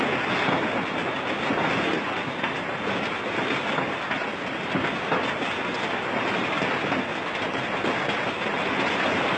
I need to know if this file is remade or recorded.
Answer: recorded